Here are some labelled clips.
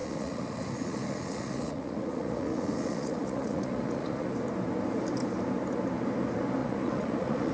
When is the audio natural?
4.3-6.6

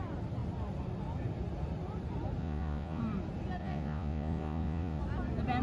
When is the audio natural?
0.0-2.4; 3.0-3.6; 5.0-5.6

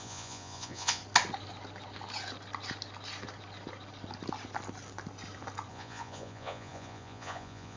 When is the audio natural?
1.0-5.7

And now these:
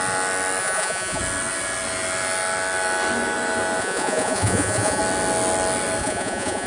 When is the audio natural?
0.0-0.6; 1.2-3.8; 5.0-6.0

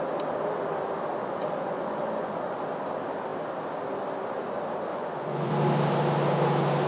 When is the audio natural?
0.0-1.2; 2.6-4.9; 5.5-6.9

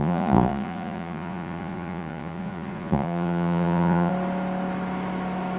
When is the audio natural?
4.1-5.6

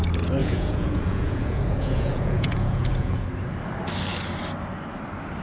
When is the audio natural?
0.0-0.4; 3.2-5.4